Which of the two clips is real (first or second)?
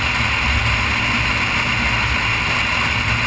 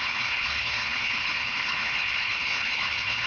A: first